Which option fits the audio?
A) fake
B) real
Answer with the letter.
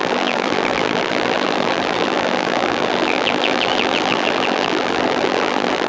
A